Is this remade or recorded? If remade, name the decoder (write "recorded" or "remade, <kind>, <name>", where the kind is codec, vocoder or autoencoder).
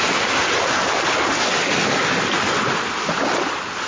recorded